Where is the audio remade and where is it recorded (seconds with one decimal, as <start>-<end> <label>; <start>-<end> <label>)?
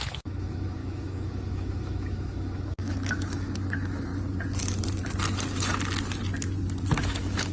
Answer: 0.0-4.1 remade; 4.1-7.0 recorded; 7.0-7.5 remade